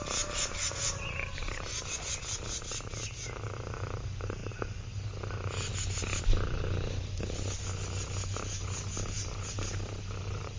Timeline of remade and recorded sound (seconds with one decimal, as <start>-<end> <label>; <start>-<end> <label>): 0.0-10.6 recorded